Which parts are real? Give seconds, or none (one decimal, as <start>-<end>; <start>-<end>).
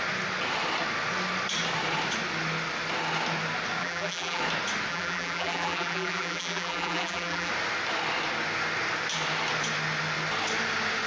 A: 0.0-3.8; 4.4-4.9; 7.5-11.1